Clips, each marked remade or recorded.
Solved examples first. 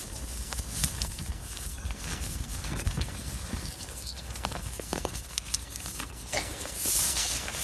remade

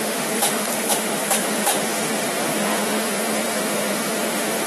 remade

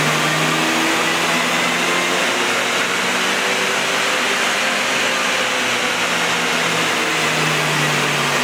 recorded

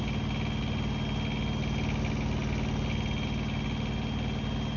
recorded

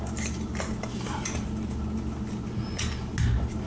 recorded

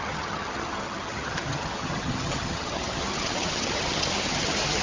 remade